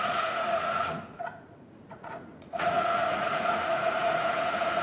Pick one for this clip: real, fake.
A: fake